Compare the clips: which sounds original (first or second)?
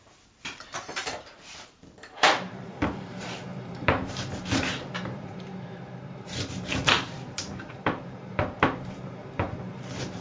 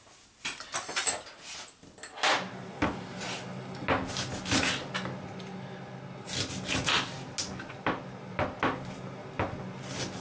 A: second